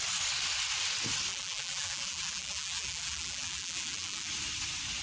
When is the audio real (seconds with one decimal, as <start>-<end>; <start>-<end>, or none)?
0.0-1.3; 4.3-5.0